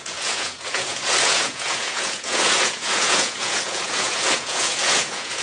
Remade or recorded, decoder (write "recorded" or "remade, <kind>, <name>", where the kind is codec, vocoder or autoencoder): remade, vocoder, Vocos